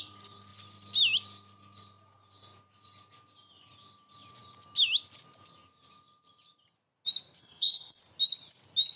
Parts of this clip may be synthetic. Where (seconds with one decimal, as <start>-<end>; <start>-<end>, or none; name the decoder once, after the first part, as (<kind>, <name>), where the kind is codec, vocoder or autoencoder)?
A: 7.4-8.0 (codec, SNAC)

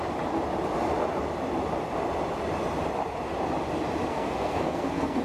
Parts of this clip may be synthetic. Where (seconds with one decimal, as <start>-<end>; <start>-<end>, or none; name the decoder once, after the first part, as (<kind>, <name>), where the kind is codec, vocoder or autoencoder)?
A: 4.1-5.2 (codec, SNAC)

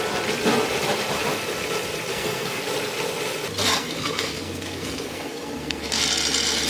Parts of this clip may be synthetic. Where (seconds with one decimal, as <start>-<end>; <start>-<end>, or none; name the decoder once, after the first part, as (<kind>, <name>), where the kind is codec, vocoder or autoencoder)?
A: 2.1-2.6 (codec, SNAC); 3.7-6.0